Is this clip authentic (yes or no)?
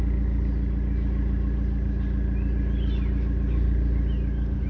yes